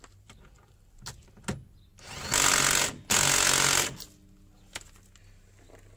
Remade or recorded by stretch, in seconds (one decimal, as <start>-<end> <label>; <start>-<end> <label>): 0.0-6.0 recorded